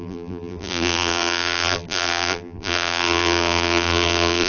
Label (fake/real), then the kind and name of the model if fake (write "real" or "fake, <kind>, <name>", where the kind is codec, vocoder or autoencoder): fake, vocoder, BigVGAN v2